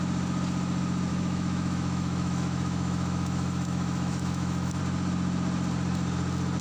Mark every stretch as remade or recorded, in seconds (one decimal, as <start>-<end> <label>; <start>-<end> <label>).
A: 0.0-1.1 recorded; 1.1-4.8 remade; 4.8-6.6 recorded